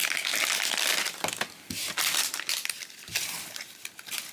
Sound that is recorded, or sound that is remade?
recorded